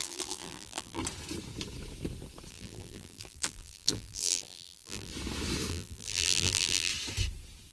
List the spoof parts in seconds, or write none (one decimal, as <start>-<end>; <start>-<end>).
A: 0.0-1.0; 2.5-5.1; 5.7-6.9